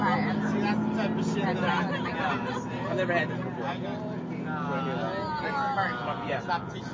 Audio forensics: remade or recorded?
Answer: recorded